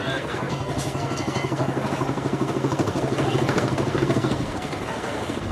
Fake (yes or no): yes